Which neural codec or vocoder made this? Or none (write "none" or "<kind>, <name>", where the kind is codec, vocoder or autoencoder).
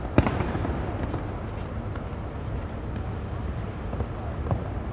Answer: none